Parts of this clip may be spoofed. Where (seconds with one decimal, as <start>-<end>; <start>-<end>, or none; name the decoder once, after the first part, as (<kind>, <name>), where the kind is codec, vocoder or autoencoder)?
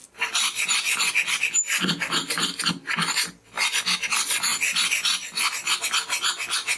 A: 0.0-2.6 (vocoder, BigVGAN v2)